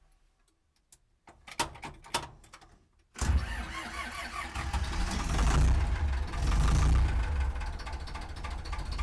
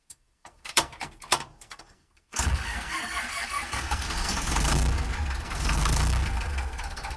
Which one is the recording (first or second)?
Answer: first